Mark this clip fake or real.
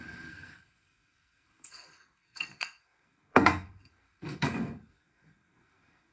fake